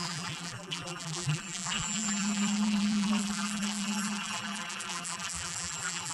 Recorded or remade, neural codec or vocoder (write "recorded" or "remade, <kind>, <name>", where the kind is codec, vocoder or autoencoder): remade, vocoder, BigVGAN v2